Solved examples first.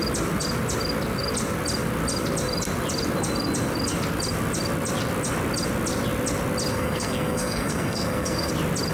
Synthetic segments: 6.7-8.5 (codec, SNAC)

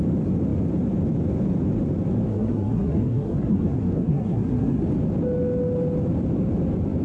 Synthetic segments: 2.3-4.8 (codec, SNAC)

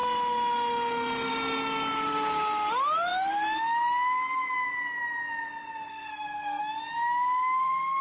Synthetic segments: 5.9-6.6 (codec, SNAC)

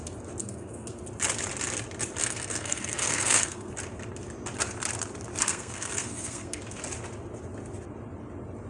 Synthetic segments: 0.4-1.0 (codec, SNAC); 2.2-3.7; 5.4-6.6